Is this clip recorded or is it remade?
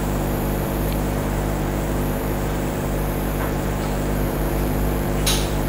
remade